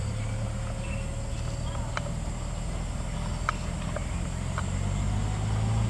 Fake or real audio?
real